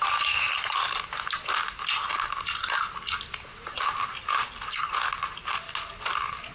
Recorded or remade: recorded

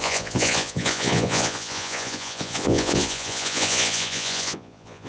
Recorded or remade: remade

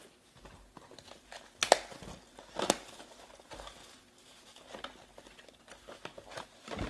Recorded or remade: recorded